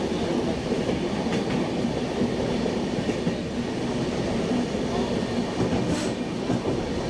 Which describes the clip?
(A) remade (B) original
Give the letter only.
B